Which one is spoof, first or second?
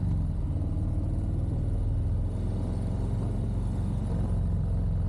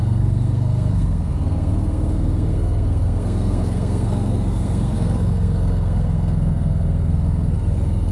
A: second